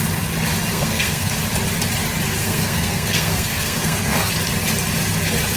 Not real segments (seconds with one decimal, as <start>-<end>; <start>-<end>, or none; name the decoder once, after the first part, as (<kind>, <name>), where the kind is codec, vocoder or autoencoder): 0.7-1.3 (codec, SNAC); 2.4-4.3